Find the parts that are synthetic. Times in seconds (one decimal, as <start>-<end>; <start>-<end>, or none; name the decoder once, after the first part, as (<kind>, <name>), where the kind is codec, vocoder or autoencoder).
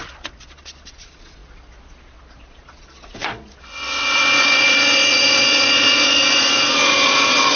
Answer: 0.0-7.6 (vocoder, Vocos)